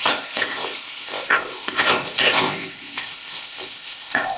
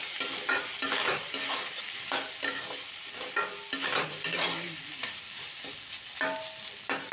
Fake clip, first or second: first